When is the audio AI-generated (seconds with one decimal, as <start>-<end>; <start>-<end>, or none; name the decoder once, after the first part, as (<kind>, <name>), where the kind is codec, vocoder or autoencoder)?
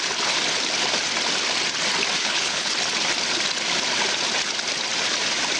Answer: 2.2-2.7 (codec, HILCodec)